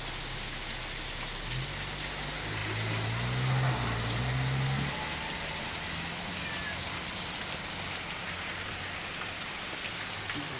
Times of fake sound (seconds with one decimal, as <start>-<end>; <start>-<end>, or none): 6.6-7.4; 8.2-9.5